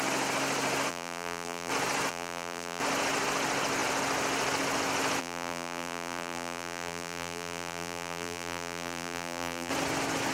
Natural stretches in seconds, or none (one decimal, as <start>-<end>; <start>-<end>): 0.0-0.9; 1.7-2.1; 2.8-5.2; 9.7-10.3